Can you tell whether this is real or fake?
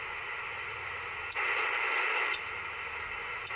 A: real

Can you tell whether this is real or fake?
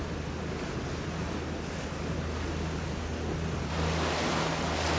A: real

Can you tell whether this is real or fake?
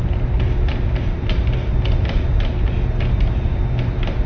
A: real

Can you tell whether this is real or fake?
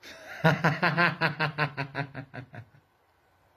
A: fake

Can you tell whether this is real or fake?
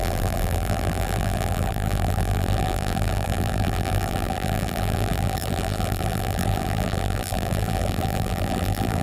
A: fake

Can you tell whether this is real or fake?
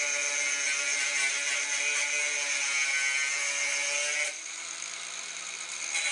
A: real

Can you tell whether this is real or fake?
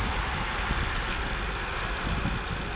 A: real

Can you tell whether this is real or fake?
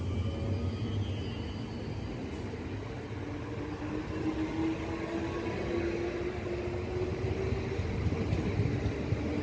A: real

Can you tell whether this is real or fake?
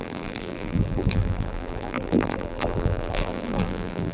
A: fake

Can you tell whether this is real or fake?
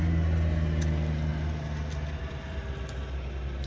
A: real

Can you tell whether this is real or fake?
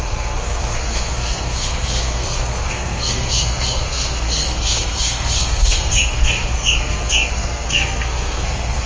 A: fake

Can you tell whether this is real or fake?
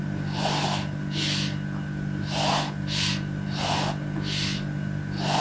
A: real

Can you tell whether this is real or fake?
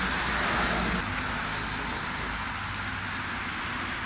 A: real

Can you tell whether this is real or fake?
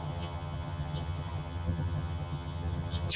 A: fake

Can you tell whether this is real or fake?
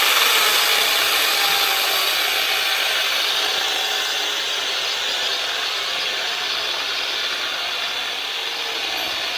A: real